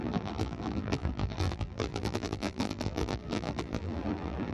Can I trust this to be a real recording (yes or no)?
no